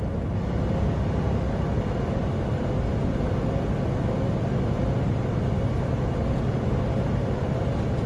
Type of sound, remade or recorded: recorded